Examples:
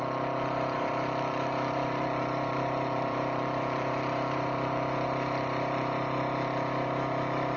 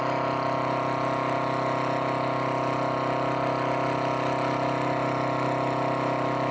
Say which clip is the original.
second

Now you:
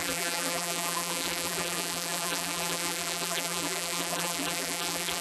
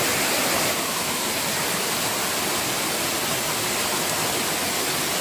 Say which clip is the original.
second